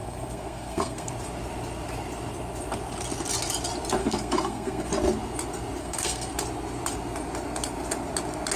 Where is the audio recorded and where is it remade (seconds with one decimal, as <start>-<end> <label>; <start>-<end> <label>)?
0.0-1.1 remade; 1.1-4.0 recorded; 4.0-4.9 remade; 4.9-5.8 recorded; 5.8-6.3 remade; 6.3-8.6 recorded